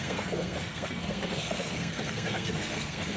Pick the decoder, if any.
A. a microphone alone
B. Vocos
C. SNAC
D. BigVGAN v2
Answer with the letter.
C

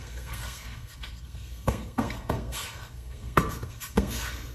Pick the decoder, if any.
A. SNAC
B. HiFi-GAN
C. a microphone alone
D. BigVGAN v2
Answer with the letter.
A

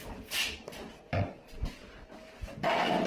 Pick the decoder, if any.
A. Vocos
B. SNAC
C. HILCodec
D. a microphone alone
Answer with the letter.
D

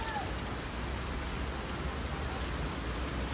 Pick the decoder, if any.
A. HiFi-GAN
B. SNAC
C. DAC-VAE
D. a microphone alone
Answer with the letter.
D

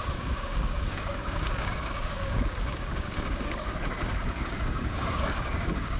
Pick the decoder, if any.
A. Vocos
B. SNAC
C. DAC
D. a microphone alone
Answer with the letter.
C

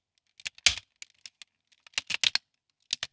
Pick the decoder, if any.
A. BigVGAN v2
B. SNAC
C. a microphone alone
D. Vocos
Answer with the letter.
C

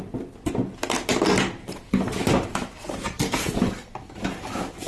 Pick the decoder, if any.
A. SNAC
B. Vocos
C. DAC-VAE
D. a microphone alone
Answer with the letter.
D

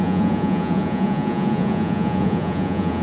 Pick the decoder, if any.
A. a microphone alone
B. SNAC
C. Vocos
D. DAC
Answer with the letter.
C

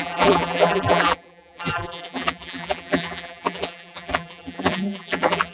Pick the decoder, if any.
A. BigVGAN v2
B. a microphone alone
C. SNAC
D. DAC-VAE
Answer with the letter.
A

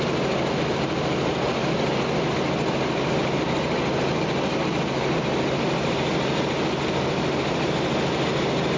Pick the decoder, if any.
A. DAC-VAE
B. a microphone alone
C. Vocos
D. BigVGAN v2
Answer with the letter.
B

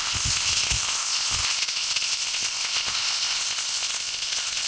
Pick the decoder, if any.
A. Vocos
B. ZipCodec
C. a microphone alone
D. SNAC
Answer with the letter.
B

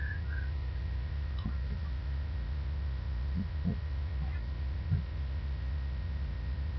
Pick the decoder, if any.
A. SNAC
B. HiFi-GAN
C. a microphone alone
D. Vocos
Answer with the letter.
D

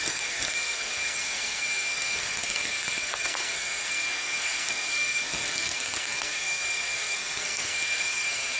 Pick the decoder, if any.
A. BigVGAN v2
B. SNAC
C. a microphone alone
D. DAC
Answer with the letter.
B